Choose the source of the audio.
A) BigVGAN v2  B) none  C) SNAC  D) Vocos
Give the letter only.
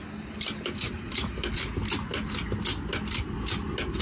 B